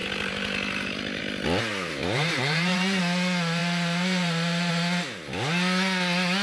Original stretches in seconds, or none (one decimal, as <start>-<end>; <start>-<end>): 1.2-1.7; 3.0-3.6; 4.7-6.4